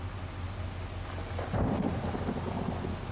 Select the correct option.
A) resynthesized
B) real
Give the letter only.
B